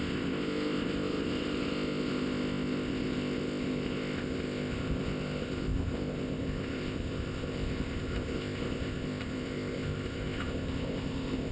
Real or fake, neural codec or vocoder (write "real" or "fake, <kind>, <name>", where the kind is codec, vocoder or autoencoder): fake, codec, ZipCodec